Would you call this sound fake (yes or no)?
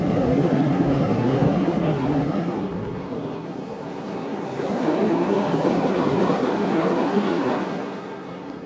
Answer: yes